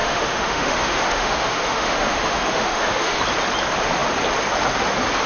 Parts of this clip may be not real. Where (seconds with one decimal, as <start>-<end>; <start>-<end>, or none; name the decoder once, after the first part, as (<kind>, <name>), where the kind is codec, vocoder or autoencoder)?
0.0-3.2 (autoencoder, DAC-VAE)